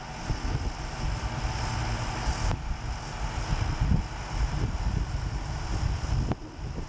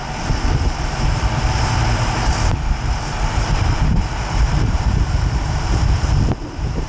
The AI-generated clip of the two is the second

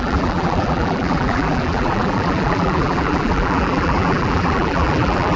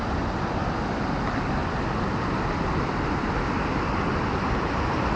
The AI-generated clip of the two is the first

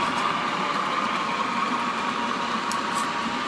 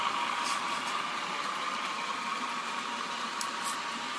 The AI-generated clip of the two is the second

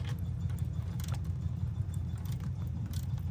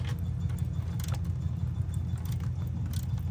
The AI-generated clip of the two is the first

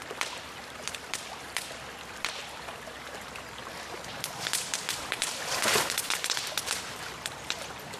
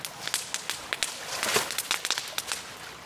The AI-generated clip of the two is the first